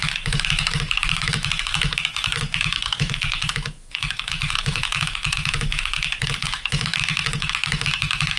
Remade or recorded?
remade